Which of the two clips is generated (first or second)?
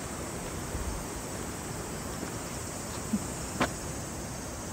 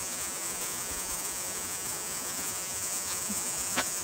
second